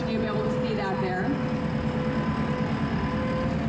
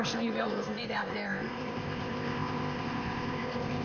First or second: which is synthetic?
second